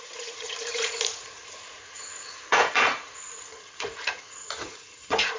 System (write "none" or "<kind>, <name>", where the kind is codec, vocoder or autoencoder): vocoder, Vocos